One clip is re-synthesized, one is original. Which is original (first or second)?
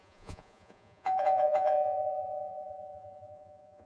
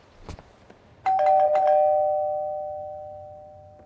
second